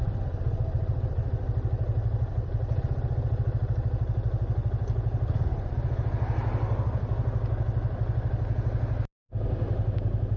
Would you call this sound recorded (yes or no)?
yes